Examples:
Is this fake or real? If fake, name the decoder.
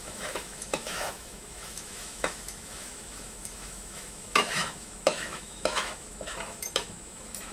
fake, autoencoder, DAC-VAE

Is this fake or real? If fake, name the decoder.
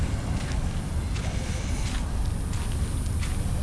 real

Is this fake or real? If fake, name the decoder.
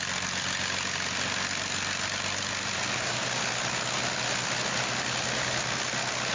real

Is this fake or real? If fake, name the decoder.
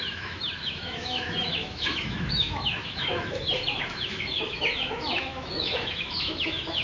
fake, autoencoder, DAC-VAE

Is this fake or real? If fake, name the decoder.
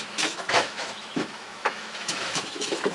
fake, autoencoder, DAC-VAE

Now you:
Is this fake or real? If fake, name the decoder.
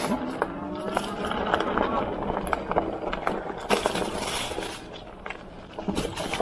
real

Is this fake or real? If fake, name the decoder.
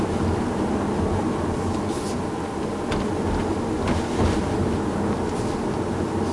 real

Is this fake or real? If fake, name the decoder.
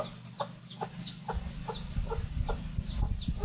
real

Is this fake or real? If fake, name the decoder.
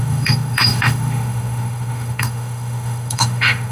fake, autoencoder, DAC-VAE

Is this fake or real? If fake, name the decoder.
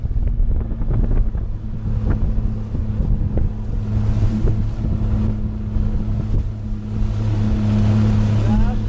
real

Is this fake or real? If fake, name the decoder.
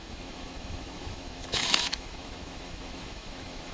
fake, autoencoder, DAC-VAE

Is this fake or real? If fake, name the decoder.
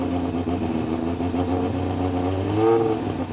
real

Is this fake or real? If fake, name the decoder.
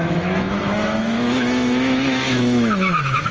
fake, autoencoder, DAC-VAE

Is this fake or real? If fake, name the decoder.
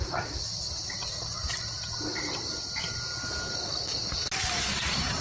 real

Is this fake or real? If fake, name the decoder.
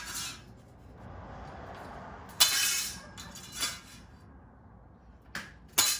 real